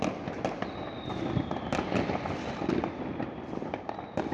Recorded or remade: recorded